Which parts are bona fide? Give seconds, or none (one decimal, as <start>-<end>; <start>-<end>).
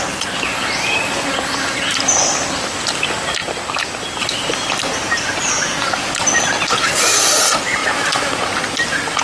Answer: 0.0-9.2